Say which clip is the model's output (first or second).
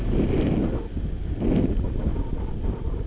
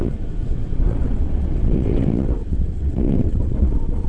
second